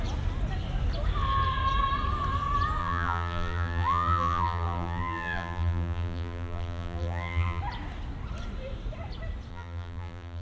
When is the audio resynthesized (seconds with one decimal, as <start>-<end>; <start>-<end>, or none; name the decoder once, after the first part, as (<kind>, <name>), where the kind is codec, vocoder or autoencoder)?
2.8-7.6 (vocoder, BigVGAN v2); 9.5-10.4